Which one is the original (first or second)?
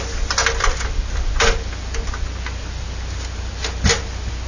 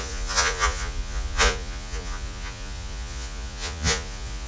first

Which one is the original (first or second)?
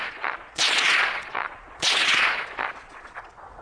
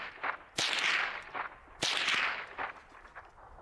second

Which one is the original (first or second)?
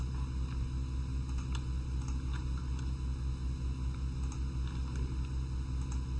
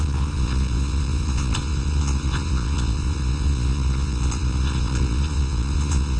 first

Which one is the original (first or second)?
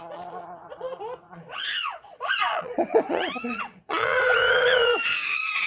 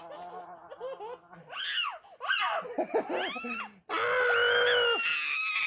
second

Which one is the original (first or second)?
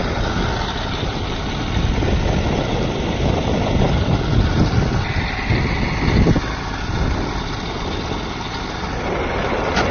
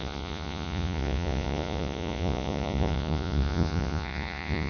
first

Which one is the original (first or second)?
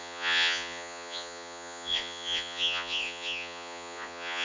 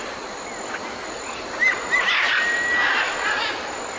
second